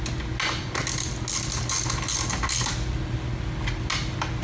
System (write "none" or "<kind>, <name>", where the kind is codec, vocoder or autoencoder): none